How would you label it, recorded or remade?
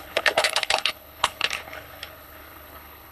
remade